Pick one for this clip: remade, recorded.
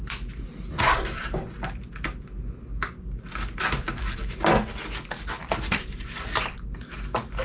recorded